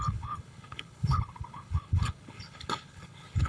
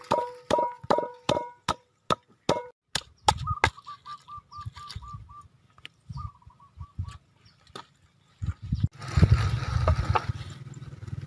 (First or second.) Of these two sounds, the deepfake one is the first